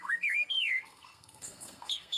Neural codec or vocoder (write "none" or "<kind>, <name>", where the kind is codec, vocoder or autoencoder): codec, SNAC